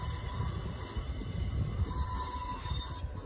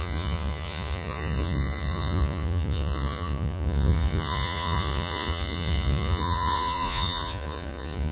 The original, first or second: first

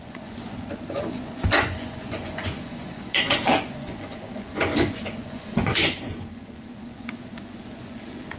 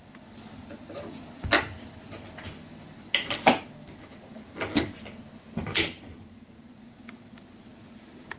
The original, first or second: second